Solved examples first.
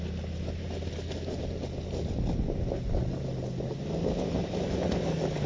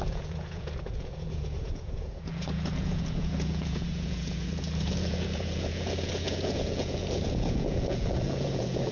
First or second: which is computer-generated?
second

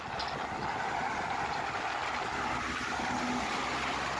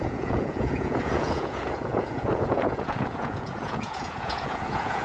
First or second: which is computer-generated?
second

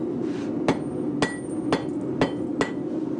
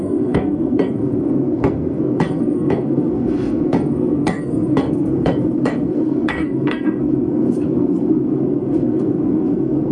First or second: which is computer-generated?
second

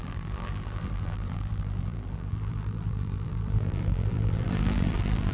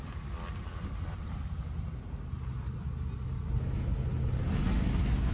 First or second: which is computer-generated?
first